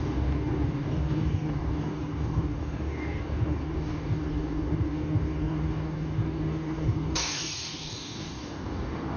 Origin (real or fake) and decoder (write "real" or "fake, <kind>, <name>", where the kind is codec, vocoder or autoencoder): fake, codec, DAC